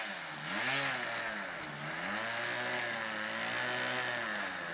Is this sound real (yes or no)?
yes